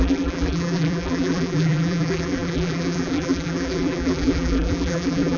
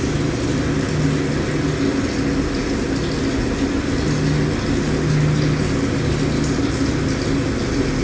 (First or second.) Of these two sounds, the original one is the second